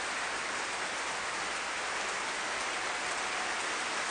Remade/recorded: recorded